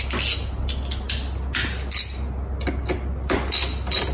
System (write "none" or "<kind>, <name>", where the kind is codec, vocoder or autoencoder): none